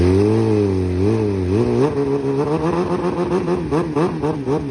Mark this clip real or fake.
real